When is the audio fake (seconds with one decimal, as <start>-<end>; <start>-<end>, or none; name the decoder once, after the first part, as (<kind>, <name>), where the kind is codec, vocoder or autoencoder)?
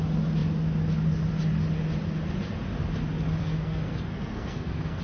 3.4-5.0 (codec, SNAC)